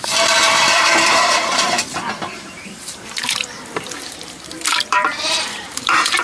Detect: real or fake fake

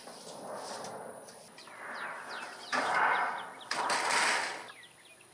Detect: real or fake real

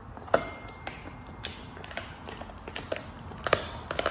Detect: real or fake real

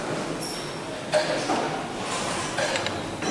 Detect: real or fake real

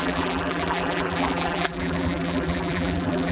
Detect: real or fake fake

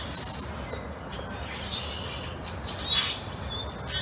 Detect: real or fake real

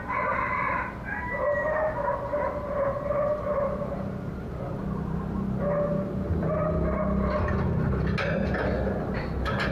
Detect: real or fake real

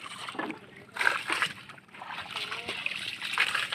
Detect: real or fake fake